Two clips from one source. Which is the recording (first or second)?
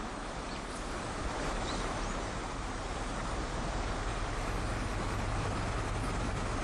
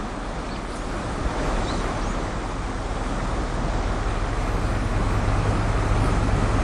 second